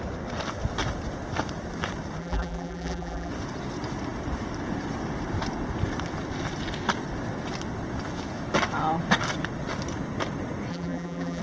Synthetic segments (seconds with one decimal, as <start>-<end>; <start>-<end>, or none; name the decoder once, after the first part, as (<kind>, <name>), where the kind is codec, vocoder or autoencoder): 2.2-3.3 (vocoder, BigVGAN v2); 10.7-11.4